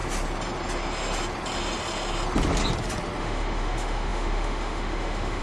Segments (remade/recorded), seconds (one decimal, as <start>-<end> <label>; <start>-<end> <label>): 0.0-3.2 recorded; 3.2-5.4 remade